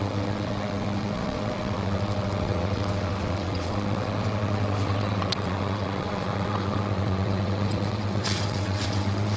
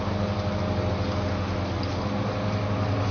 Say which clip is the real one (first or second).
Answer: second